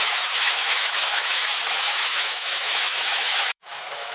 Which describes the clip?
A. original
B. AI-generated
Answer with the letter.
B